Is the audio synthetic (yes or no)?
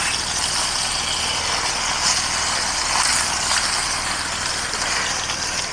no